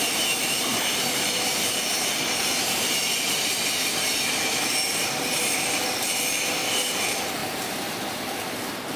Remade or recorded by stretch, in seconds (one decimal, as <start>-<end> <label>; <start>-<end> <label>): 0.0-1.7 remade; 1.7-2.4 recorded; 2.4-9.0 remade